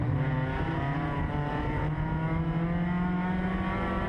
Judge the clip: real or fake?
real